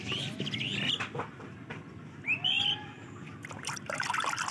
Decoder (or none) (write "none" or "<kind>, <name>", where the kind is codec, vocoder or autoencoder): none